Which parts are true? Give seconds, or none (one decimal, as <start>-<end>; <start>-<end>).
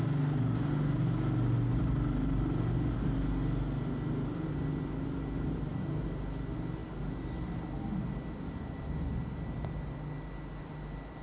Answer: 0.0-11.2